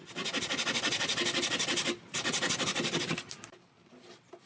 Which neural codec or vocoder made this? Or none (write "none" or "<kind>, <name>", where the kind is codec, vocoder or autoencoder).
none